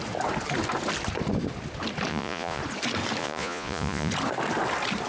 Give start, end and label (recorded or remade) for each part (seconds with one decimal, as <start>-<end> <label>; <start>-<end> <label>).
0.0-2.1 recorded; 2.1-2.6 remade; 2.6-3.2 recorded; 3.2-4.1 remade; 4.1-5.1 recorded